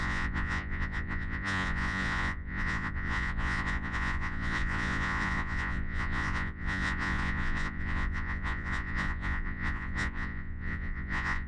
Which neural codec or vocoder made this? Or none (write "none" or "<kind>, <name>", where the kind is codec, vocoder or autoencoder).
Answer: vocoder, Vocos